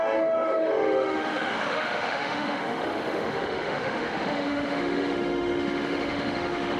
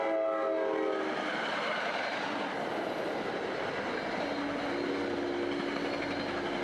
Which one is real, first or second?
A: second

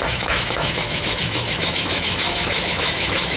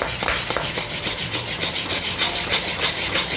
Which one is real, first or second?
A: second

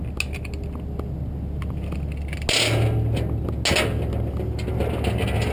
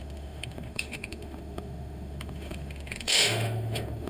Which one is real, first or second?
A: first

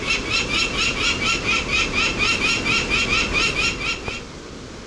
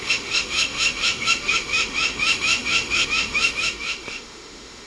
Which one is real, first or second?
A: first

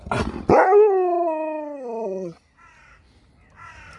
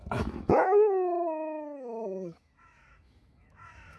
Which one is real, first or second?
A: first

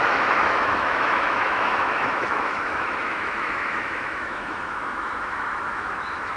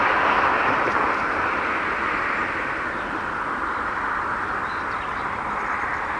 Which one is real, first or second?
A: second